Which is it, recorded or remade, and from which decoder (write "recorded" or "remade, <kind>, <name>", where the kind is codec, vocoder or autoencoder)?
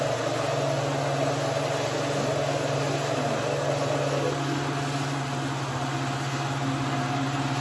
recorded